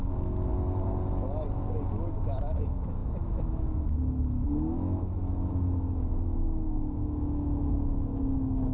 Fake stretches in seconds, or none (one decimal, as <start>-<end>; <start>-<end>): 0.0-0.5; 2.2-8.7